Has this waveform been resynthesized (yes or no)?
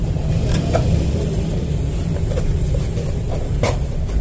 no